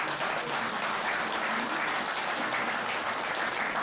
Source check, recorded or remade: recorded